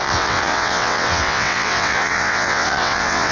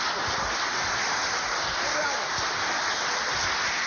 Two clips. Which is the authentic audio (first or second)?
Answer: second